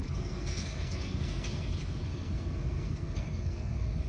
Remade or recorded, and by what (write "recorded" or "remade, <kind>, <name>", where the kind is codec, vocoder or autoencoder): remade, codec, SNAC